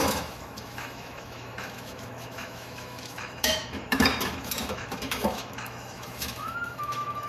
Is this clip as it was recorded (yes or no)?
no